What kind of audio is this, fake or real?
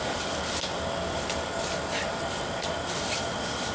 real